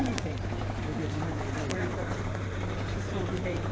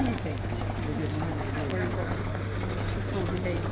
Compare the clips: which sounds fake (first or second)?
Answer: first